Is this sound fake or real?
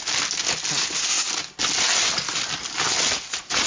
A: real